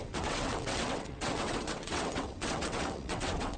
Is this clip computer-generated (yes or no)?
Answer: yes